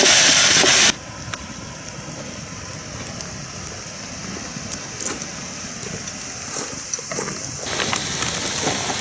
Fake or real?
real